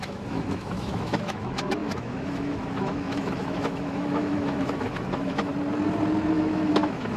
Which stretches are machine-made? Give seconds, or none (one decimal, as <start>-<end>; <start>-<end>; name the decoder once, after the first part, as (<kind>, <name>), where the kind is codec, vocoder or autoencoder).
0.0-5.5 (autoencoder, DAC-VAE); 6.3-7.2